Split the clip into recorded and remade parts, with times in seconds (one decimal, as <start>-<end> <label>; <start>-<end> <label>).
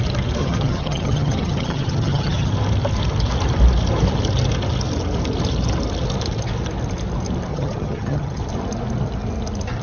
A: 0.0-0.4 recorded; 0.4-2.5 remade; 2.5-7.5 recorded; 7.5-8.4 remade; 8.4-9.8 recorded